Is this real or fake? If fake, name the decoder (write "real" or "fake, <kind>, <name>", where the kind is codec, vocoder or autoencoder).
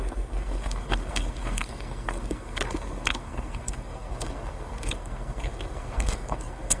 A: fake, codec, SNAC